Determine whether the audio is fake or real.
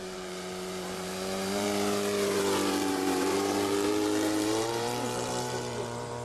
fake